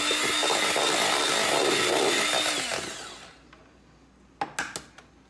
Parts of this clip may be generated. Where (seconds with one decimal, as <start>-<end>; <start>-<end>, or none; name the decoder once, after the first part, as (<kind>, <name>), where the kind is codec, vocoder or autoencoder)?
none